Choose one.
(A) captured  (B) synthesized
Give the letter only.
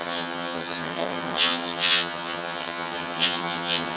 B